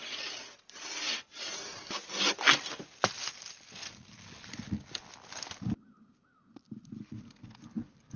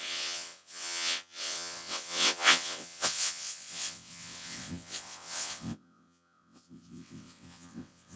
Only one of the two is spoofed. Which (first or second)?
second